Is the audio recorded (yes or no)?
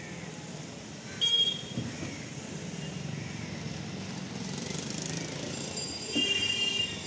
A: yes